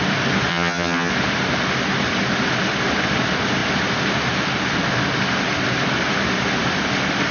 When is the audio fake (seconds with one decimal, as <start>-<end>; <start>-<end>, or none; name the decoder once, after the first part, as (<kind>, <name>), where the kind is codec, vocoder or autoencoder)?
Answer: 0.5-1.1 (vocoder, HiFi-GAN)